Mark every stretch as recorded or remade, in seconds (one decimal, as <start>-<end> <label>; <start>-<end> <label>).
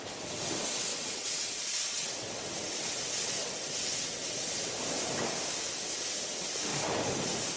0.0-0.9 recorded; 0.9-4.7 remade; 4.7-7.6 recorded